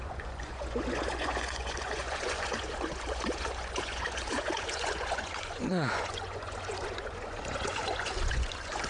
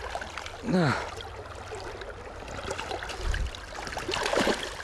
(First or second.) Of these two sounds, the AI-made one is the first